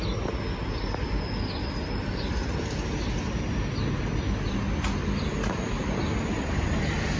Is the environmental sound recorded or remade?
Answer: recorded